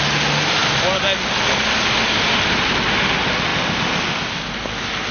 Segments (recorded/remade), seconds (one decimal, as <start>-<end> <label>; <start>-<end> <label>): 0.0-5.1 recorded